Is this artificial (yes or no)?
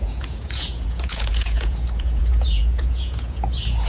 yes